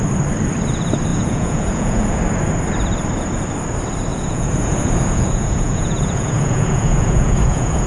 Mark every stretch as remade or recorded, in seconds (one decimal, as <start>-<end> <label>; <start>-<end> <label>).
0.0-1.1 recorded; 1.1-2.2 remade; 2.2-4.1 recorded; 4.1-7.9 remade